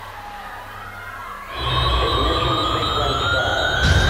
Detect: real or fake real